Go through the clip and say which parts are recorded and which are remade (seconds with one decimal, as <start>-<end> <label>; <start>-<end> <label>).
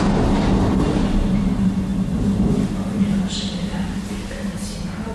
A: 0.0-5.1 recorded